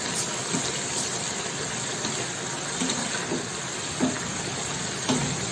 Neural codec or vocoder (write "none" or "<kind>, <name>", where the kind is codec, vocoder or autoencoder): none